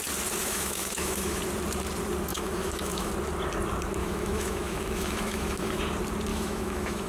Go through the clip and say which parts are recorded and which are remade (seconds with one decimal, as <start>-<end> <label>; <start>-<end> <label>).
0.0-0.4 recorded; 0.4-1.4 remade; 1.4-2.3 recorded; 2.3-3.1 remade; 3.1-4.0 recorded; 4.0-5.8 remade; 5.8-6.3 recorded; 6.3-7.1 remade